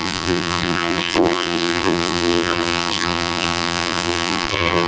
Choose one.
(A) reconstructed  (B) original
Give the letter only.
A